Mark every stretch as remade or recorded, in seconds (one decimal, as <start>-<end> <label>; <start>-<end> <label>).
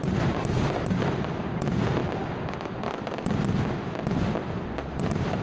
0.0-2.0 remade; 2.0-4.8 recorded; 4.8-5.4 remade